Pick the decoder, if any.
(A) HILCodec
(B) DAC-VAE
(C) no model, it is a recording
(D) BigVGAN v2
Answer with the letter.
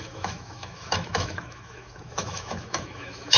B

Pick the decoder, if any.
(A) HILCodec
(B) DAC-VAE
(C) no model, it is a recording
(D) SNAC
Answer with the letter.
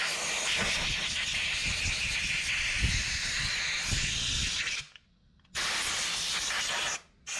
C